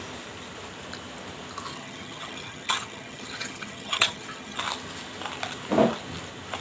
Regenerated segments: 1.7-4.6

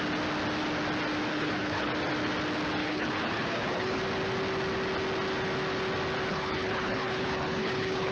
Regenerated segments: 1.3-1.9; 2.8-4.0; 6.3-8.1